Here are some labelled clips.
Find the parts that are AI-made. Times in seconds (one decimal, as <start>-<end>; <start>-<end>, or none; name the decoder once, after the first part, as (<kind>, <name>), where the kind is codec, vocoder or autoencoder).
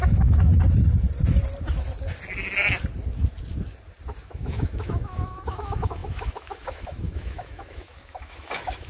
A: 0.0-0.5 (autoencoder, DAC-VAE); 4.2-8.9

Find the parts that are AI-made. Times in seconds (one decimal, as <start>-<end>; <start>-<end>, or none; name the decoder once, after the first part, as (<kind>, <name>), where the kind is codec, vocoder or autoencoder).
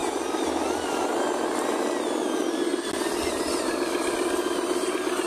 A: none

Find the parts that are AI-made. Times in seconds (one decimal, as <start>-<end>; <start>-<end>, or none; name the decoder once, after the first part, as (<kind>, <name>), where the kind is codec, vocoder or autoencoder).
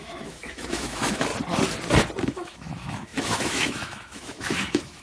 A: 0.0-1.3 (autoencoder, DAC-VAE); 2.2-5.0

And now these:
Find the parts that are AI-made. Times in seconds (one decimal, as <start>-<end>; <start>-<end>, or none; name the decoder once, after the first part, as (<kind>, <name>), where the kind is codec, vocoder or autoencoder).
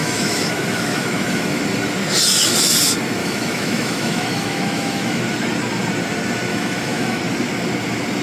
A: 0.0-1.6 (autoencoder, DAC-VAE); 3.2-5.2; 6.5-7.2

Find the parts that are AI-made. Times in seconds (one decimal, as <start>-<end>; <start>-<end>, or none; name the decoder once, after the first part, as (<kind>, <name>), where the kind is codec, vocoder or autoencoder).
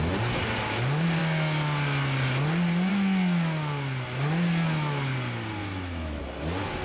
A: 5.6-6.2 (autoencoder, DAC-VAE)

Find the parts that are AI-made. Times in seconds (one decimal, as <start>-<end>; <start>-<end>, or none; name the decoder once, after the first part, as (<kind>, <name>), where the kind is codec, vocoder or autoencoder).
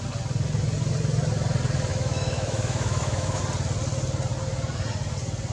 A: 1.9-3.4 (autoencoder, DAC-VAE)